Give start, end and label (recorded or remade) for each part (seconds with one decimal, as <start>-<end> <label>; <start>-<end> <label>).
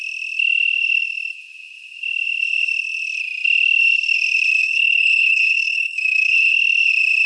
0.0-4.6 recorded; 4.6-6.5 remade; 6.5-7.3 recorded